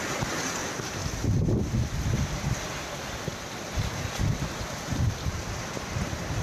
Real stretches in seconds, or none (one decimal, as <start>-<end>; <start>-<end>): 0.0-0.6; 2.6-3.3; 6.0-6.4